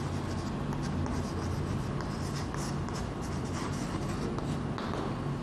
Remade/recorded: recorded